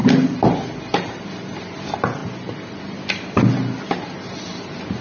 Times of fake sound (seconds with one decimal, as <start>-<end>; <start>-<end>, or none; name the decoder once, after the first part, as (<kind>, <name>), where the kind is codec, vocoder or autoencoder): none